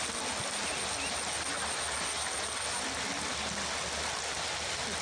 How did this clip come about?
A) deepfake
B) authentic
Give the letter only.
B